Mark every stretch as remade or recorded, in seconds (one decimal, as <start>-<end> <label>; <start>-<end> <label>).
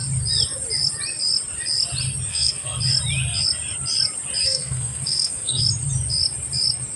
0.0-2.3 recorded; 2.3-2.8 remade; 2.8-4.4 recorded; 4.4-5.6 remade; 5.6-7.0 recorded